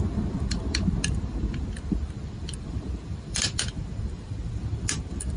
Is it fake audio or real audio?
fake